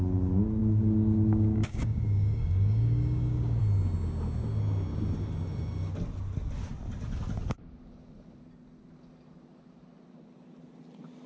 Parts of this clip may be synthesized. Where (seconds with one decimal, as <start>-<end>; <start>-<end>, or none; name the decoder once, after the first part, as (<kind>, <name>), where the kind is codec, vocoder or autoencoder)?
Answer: 0.6-3.6 (codec, DAC)